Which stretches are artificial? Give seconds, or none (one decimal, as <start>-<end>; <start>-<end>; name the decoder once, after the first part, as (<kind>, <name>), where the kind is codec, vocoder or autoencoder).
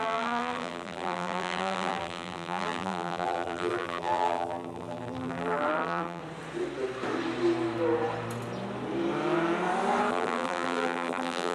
0.0-6.2 (vocoder, BigVGAN v2); 10.1-11.5